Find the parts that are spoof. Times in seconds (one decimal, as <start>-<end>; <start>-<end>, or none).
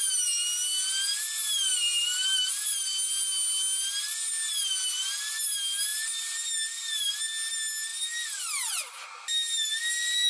none